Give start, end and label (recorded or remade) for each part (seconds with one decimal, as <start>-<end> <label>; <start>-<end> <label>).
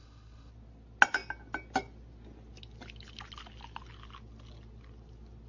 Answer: 0.0-0.5 remade; 0.5-5.5 recorded